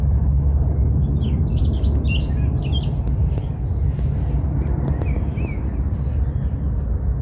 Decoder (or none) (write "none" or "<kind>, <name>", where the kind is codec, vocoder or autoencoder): none